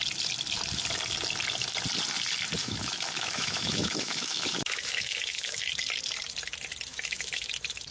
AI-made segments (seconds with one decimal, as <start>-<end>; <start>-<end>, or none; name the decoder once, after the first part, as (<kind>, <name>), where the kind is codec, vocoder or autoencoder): 2.6-5.6 (autoencoder, DAC-VAE); 6.9-7.5